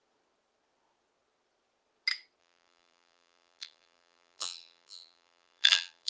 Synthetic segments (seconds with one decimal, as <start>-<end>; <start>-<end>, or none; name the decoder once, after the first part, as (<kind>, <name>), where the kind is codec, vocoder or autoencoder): 2.4-6.1 (vocoder, BigVGAN v2)